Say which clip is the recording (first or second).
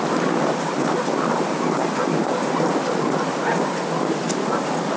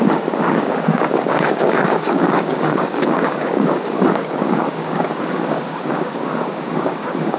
first